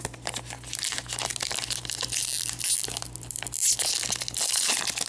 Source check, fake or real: real